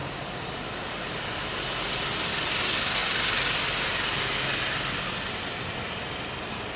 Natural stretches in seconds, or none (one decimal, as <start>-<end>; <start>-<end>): 0.0-6.8

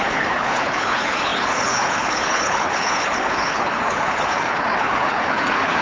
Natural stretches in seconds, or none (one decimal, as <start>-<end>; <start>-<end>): none

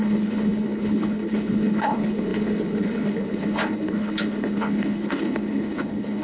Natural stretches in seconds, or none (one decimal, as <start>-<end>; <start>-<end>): none

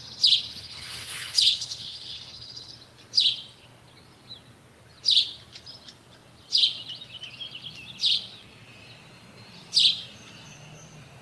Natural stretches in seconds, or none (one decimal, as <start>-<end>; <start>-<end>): 0.0-0.6; 2.7-11.2

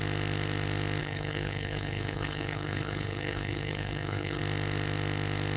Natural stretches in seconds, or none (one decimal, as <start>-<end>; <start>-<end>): 0.0-1.0; 4.4-5.6